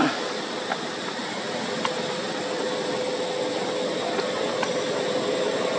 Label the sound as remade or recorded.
recorded